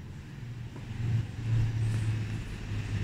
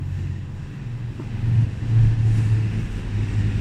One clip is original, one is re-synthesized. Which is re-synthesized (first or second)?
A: second